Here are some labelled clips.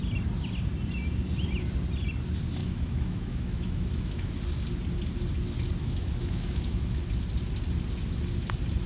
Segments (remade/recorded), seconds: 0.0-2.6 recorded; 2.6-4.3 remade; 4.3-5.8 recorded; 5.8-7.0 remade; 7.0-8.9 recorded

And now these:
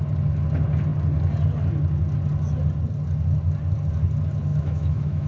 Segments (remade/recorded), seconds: 0.0-4.5 recorded; 4.5-5.3 remade

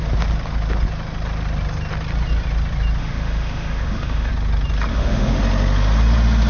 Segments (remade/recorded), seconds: 0.0-3.0 recorded; 3.0-4.3 remade; 4.3-4.9 recorded; 4.9-5.4 remade; 5.4-6.5 recorded

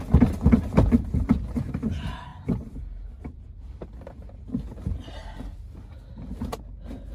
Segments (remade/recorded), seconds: 0.0-7.1 recorded

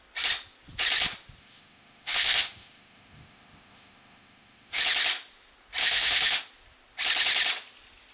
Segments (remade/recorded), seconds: 0.0-1.4 recorded; 1.4-4.8 remade; 4.8-5.8 recorded; 5.8-6.4 remade; 6.4-8.1 recorded